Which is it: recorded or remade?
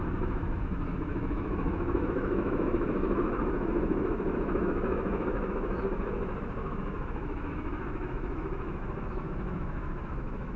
remade